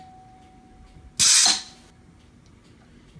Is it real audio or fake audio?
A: real